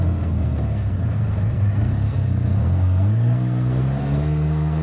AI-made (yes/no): yes